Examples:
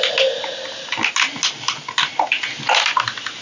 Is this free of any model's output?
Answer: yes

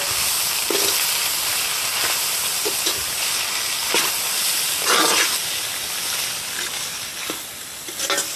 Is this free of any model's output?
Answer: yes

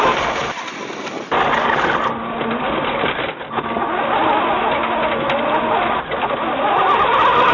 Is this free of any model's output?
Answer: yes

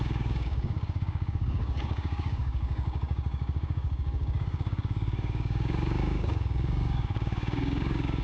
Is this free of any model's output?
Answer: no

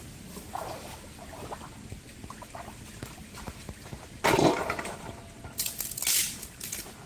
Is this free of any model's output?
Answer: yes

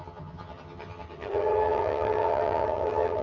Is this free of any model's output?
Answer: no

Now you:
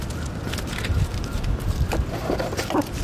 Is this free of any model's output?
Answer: yes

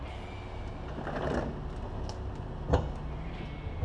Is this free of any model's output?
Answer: yes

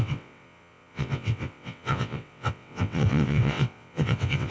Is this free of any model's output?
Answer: no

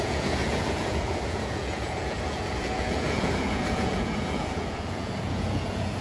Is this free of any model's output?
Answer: no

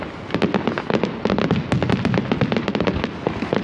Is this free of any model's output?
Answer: yes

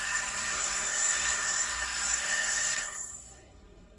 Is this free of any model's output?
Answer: no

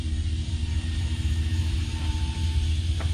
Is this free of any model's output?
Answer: no